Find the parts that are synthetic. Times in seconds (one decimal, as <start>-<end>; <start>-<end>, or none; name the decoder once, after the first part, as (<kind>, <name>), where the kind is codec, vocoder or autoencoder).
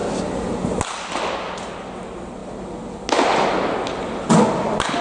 none